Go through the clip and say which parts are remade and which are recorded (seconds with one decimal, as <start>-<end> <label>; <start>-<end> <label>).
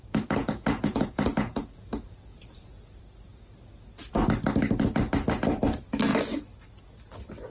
0.0-0.4 recorded; 0.4-3.0 remade; 3.0-7.5 recorded